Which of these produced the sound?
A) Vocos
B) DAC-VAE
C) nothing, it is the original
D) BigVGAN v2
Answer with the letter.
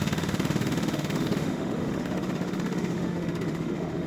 B